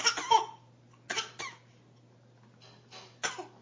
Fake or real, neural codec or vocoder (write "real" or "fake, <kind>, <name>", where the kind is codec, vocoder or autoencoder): real